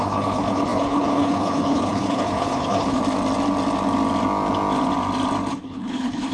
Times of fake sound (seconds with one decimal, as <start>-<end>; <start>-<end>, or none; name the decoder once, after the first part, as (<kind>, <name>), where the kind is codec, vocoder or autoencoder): 0.0-3.0 (codec, HILCodec); 5.5-6.3